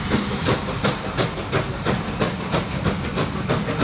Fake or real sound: real